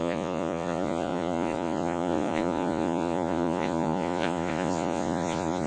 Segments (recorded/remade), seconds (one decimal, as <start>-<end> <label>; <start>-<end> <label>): 0.0-5.7 remade